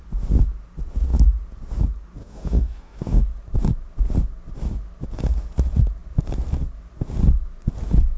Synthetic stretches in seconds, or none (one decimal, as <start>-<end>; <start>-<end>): 2.2-3.2